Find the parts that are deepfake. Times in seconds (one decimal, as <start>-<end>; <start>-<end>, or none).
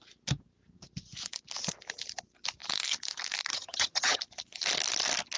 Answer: 3.5-4.2